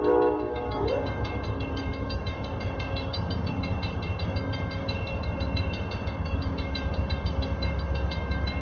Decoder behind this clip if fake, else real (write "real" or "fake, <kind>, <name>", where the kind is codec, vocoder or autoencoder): fake, codec, DAC